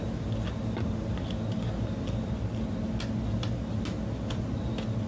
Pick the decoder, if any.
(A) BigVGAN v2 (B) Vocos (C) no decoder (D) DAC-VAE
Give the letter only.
C